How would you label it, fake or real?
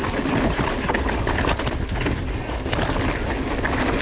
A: real